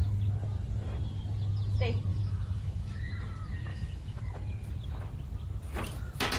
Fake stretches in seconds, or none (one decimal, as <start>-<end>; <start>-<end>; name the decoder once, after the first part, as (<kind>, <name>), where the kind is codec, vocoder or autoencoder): 2.1-2.9 (autoencoder, DAC-VAE); 3.7-4.2